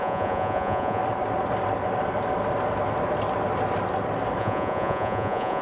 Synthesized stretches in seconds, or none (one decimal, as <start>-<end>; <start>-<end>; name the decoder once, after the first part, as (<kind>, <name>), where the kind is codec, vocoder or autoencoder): 0.0-1.0 (vocoder, Vocos); 4.4-5.6